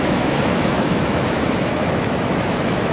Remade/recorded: remade